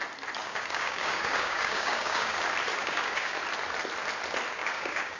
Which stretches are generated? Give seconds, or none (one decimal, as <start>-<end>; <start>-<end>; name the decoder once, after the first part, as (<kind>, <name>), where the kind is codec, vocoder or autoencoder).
0.4-2.4 (codec, DAC); 2.8-3.4; 4.6-5.2